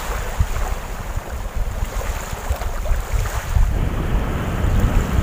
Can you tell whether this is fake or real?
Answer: real